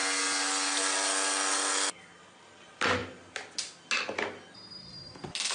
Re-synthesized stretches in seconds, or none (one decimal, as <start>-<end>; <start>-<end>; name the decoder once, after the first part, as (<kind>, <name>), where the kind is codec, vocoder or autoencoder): none